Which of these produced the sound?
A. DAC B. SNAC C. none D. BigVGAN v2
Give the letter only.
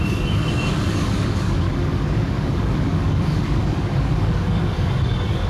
A